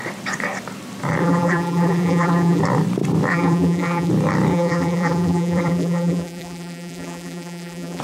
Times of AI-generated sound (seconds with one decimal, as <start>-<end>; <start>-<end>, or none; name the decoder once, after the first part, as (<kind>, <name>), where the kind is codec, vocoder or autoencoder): 1.2-2.6 (vocoder, BigVGAN v2); 3.3-4.1; 4.5-8.0